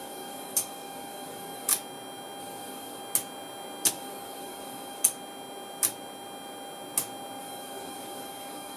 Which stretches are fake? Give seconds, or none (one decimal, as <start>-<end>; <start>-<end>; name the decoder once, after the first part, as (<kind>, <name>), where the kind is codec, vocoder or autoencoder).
0.0-1.7 (codec, DAC); 2.4-3.0; 3.9-5.0; 7.4-8.8